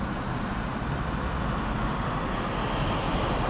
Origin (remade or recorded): recorded